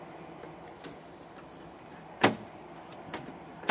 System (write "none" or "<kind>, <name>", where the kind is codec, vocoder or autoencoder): none